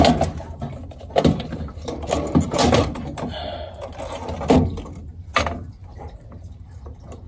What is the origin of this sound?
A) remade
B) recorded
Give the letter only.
B